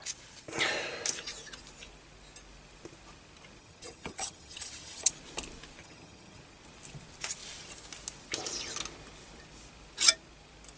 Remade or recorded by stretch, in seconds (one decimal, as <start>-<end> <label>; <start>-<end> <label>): 0.0-3.6 recorded; 3.6-5.1 remade; 5.1-5.8 recorded; 5.8-6.4 remade; 6.4-10.8 recorded